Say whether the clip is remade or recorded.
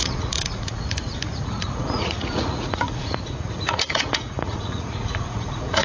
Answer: remade